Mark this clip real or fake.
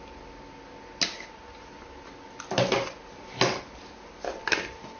real